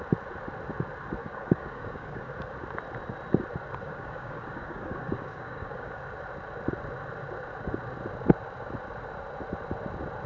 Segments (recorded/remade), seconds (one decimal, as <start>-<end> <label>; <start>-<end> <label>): 0.0-1.2 recorded; 1.2-2.3 remade; 2.3-3.8 recorded; 3.8-6.0 remade; 6.0-10.3 recorded